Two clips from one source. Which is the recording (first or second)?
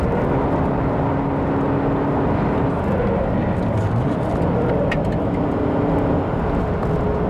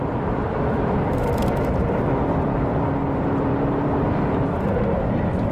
first